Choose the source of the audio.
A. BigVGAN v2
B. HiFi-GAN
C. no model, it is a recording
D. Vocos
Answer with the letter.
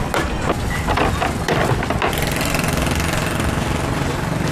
C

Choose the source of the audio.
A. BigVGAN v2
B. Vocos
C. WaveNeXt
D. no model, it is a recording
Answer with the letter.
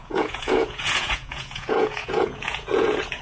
B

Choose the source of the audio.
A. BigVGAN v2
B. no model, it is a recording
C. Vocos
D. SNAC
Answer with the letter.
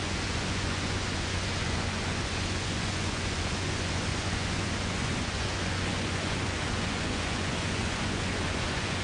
C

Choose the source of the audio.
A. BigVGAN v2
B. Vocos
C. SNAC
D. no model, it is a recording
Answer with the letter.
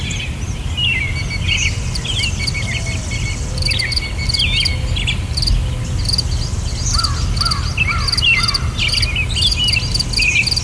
D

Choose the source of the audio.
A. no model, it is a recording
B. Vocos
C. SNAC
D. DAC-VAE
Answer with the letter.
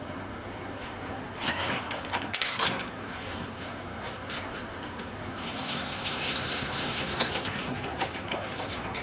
C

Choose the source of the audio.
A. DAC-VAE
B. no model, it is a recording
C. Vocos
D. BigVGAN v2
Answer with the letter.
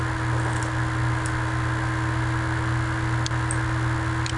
B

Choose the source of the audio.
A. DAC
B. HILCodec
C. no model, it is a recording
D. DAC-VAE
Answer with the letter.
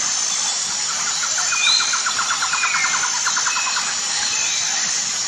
C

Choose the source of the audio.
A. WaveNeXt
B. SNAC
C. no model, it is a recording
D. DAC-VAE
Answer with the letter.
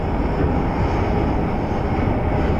C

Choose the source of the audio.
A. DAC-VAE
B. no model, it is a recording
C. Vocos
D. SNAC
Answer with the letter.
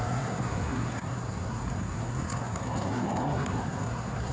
D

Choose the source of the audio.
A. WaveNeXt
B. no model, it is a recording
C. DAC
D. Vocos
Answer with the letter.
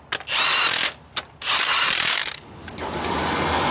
B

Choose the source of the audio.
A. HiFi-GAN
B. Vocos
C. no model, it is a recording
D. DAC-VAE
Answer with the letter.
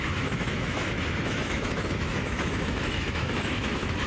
D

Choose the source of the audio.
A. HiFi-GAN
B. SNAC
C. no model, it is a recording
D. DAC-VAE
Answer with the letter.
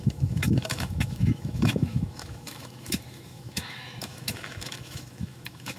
D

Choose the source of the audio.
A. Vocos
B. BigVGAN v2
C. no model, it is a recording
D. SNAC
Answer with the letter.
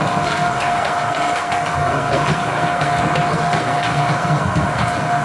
D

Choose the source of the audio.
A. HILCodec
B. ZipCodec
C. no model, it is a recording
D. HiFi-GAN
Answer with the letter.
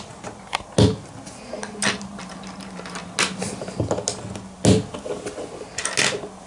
C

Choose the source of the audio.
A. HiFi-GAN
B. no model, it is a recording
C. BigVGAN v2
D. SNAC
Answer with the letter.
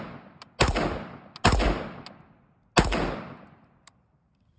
B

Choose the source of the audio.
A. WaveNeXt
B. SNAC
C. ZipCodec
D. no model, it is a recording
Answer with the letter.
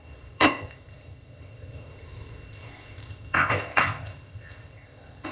C